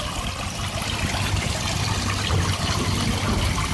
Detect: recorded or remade recorded